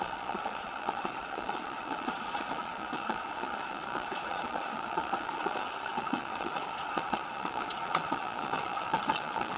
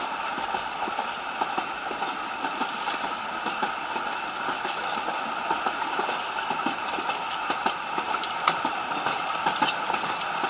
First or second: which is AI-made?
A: first